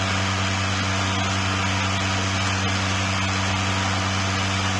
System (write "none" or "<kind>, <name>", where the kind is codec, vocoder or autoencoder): none